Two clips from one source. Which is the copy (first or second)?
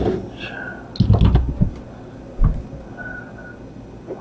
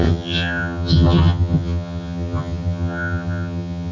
second